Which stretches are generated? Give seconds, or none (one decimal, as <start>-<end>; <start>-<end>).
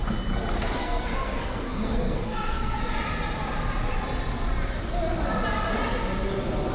0.8-2.8